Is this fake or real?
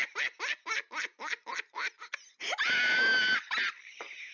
real